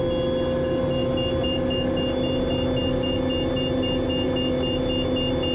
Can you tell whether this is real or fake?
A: real